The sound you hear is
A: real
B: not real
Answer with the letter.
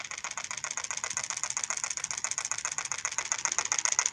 A